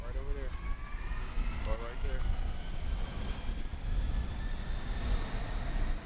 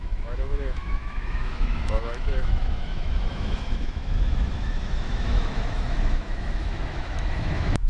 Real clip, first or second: first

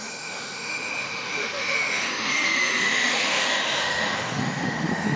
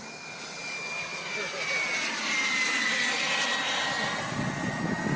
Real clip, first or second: second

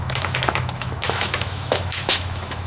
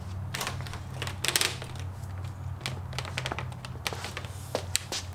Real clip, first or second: second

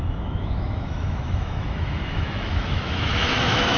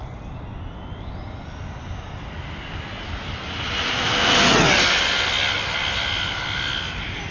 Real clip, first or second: second